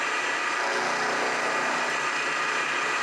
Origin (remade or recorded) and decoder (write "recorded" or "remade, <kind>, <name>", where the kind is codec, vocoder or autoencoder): recorded